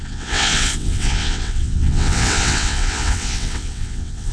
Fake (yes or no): yes